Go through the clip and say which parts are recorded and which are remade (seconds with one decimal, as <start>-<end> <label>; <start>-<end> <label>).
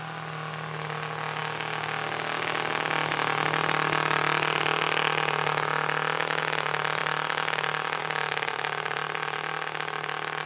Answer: 0.0-10.5 recorded